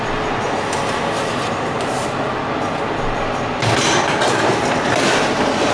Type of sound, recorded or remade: recorded